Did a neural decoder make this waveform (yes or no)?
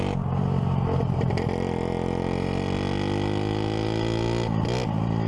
no